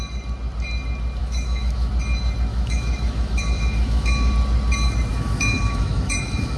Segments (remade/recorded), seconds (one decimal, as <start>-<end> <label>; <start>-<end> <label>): 0.0-1.2 recorded; 1.2-1.9 remade; 1.9-2.5 recorded; 2.5-4.3 remade; 4.3-5.1 recorded; 5.1-6.6 remade